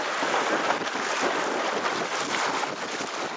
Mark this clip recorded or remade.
recorded